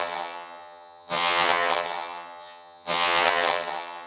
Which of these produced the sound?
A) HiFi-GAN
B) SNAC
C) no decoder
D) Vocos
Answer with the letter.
A